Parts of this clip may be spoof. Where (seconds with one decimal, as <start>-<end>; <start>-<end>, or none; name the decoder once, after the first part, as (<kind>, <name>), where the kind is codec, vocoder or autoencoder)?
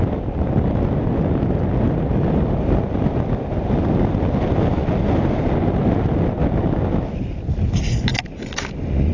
none